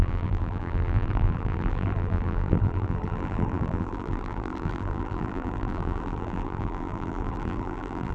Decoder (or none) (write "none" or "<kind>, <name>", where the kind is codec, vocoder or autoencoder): vocoder, BigVGAN v2